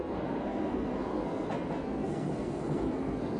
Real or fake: fake